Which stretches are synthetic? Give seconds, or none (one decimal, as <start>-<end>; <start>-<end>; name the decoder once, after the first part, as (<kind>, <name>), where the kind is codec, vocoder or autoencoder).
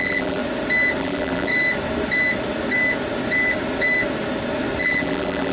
0.0-0.4 (vocoder, BigVGAN v2); 1.0-1.5; 4.8-5.5